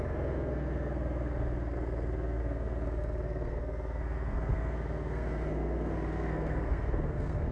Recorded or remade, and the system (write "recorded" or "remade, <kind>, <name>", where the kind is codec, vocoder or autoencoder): remade, codec, SNAC